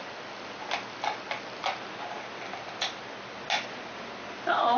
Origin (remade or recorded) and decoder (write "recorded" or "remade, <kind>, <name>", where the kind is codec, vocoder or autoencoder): recorded